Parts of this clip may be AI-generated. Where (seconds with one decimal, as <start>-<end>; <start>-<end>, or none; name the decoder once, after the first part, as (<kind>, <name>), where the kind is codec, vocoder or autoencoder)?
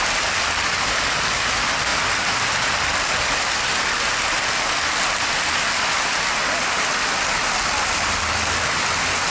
none